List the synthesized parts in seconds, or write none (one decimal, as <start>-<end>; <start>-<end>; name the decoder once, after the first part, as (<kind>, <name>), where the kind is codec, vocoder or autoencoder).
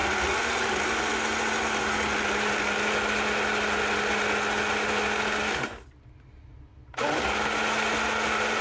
none